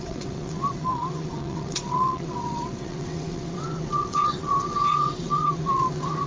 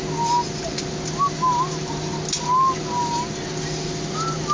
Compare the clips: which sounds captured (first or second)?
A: second